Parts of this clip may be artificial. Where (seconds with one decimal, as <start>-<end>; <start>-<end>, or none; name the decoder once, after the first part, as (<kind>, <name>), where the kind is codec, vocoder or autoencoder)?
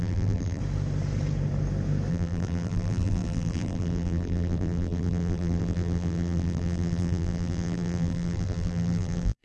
0.0-0.6 (vocoder, BigVGAN v2); 2.1-9.4